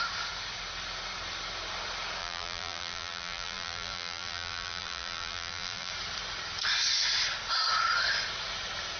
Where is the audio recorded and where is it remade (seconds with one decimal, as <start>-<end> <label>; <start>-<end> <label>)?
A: 0.0-2.2 recorded; 2.2-5.9 remade; 5.9-9.0 recorded